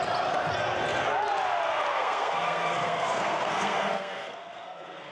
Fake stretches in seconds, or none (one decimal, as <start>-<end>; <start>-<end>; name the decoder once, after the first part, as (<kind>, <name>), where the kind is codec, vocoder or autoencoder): 1.9-5.1 (codec, SNAC)